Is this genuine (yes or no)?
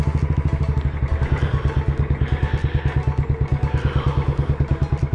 yes